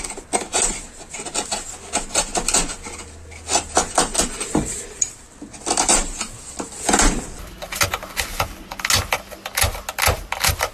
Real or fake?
real